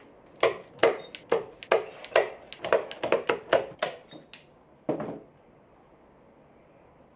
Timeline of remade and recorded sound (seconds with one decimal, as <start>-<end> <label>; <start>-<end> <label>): 0.0-7.2 recorded